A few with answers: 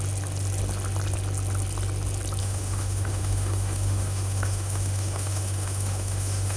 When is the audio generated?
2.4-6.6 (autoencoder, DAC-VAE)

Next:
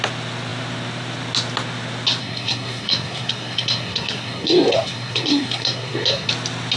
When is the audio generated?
2.2-6.3 (codec, SNAC)

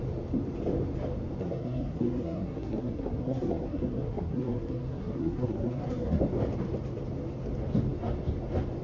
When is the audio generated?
1.4-6.2 (codec, SNAC)

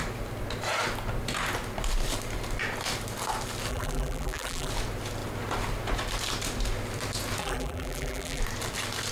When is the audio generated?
3.7-4.7 (vocoder, BigVGAN v2); 7.4-8.4